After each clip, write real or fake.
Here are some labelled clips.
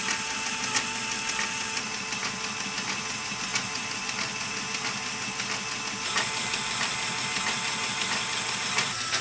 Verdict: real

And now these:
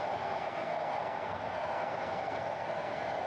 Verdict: fake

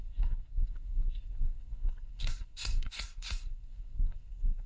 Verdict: fake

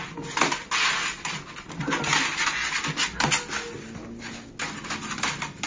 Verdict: real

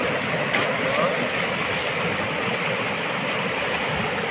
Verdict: real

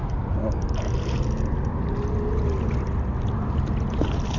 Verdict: real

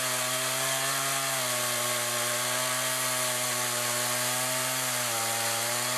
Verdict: real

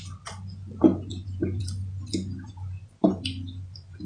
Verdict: real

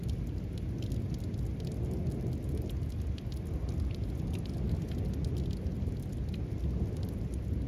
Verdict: real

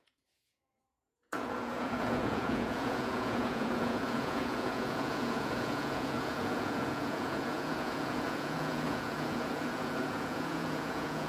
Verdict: fake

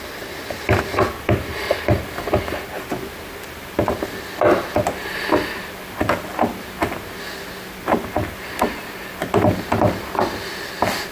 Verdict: real